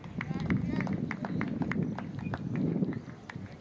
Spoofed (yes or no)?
no